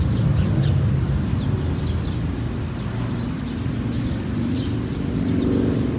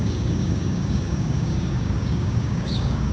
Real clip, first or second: first